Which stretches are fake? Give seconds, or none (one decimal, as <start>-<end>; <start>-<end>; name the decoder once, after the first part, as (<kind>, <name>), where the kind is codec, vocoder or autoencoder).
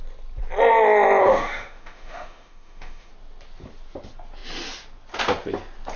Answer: 1.2-3.1 (autoencoder, DAC-VAE)